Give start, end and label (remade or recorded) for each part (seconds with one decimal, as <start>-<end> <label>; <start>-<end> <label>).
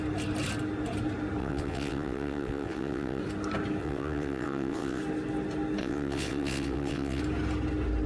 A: 0.0-1.4 recorded; 1.4-3.2 remade; 3.2-3.8 recorded; 3.8-5.0 remade; 5.0-5.8 recorded; 5.8-7.2 remade; 7.2-8.1 recorded